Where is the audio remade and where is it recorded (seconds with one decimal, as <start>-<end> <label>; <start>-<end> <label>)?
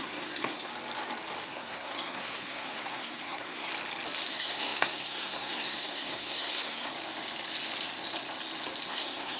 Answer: 0.0-0.7 remade; 0.7-1.5 recorded; 1.5-3.7 remade; 3.7-4.3 recorded; 4.3-6.9 remade; 6.9-8.9 recorded; 8.9-9.4 remade